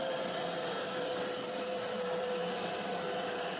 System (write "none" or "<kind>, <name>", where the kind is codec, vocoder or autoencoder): vocoder, BigVGAN v2